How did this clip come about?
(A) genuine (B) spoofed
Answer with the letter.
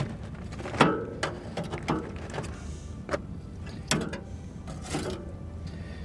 A